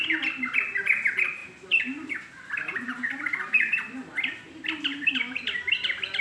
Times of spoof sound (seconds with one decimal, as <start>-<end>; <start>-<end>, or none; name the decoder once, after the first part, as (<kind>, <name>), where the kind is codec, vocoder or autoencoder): none